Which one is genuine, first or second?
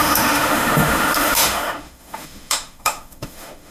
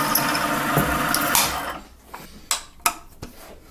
second